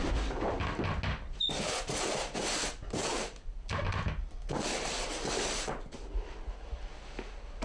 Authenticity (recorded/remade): recorded